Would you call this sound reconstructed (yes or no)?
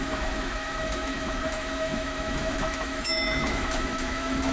yes